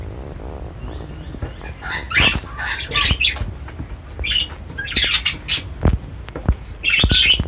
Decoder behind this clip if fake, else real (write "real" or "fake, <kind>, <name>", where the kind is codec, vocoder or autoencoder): real